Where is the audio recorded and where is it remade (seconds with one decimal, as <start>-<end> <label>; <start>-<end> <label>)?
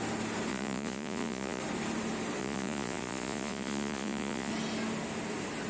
0.0-0.5 recorded; 0.5-1.6 remade; 1.6-2.4 recorded; 2.4-4.5 remade; 4.5-5.7 recorded